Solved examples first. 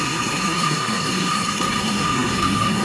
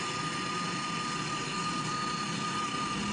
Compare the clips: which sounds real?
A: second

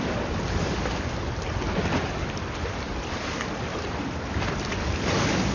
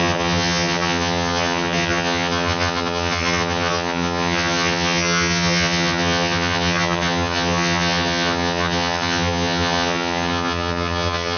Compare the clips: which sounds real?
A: first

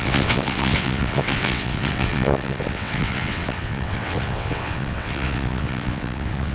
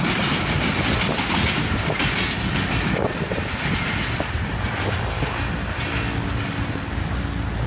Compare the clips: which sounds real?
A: second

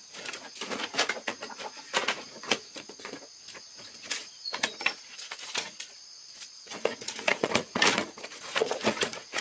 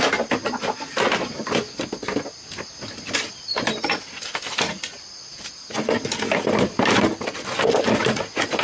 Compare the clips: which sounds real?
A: second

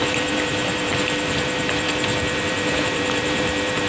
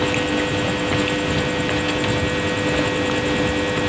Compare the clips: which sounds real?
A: second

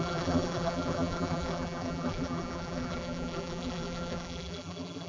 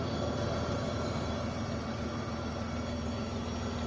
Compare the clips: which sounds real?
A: second